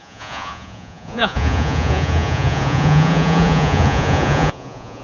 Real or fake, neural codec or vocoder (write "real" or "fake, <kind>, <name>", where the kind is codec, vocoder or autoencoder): fake, vocoder, Vocos